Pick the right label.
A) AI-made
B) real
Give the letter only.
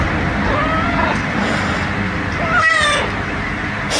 B